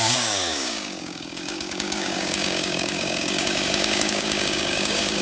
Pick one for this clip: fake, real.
fake